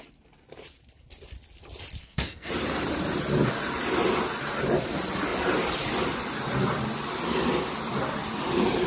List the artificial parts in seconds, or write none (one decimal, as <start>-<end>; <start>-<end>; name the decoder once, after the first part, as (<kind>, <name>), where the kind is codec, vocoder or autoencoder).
2.0-2.5 (codec, SNAC)

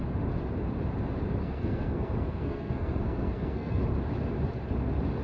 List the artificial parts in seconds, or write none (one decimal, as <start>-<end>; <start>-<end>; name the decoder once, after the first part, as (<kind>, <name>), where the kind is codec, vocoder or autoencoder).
1.4-3.8 (codec, SNAC)

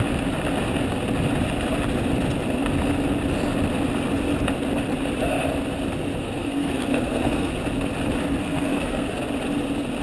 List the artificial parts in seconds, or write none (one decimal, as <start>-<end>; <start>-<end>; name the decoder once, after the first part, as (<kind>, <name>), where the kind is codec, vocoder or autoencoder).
6.2-7.5 (codec, SNAC); 8.4-9.1

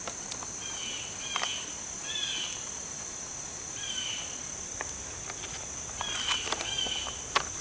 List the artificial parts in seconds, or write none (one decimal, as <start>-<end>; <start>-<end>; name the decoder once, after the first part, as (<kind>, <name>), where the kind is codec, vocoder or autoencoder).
none

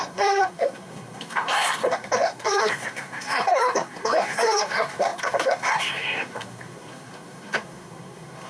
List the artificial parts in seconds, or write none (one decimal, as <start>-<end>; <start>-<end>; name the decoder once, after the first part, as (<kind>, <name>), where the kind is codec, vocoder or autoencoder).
0.0-8.5 (codec, SNAC)

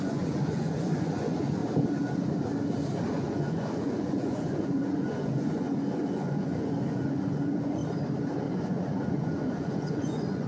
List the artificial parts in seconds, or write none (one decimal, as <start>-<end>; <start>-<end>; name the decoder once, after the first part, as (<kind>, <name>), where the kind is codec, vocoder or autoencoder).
0.0-1.6 (vocoder, Vocos); 3.1-7.8; 8.5-10.5

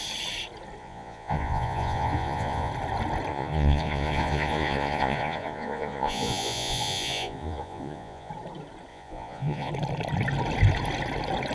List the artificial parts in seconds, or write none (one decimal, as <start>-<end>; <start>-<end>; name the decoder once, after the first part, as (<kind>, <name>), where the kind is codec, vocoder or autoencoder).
0.8-2.7 (vocoder, Vocos); 3.3-8.3; 8.9-9.7